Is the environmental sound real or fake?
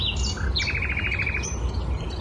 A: real